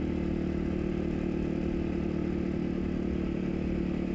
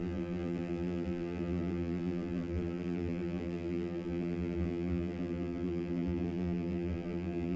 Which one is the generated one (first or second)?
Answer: second